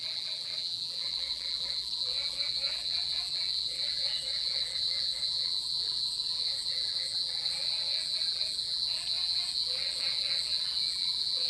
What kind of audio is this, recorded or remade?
remade